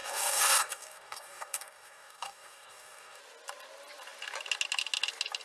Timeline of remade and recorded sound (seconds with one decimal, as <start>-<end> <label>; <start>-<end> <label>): 0.0-3.2 remade; 3.2-5.4 recorded